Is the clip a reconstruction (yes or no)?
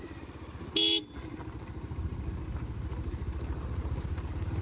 no